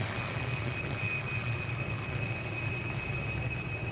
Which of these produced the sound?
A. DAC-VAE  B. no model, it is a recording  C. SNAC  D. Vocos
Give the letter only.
B